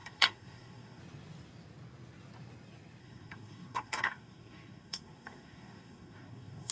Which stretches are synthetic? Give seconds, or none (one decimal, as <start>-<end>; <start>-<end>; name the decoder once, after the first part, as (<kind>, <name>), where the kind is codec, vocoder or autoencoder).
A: 0.0-1.0 (codec, SNAC); 3.0-6.7